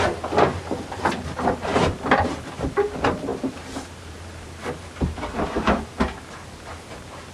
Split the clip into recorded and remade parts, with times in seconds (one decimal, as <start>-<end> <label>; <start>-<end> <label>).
0.0-1.7 recorded; 1.7-2.5 remade; 2.5-3.3 recorded; 3.3-5.9 remade; 5.9-7.3 recorded